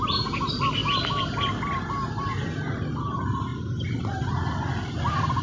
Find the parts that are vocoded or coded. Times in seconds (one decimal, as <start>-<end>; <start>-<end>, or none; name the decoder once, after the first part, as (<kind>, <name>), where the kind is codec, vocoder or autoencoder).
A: 0.8-1.4 (vocoder, BigVGAN v2); 3.5-4.3